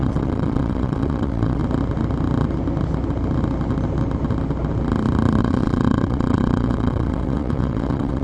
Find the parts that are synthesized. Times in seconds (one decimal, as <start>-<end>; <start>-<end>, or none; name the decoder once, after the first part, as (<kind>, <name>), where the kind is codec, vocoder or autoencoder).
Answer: 0.0-1.6 (vocoder, WaveNeXt); 5.4-8.2